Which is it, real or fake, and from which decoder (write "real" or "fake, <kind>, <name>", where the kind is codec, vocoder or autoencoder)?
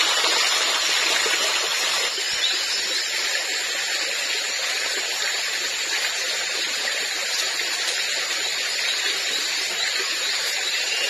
real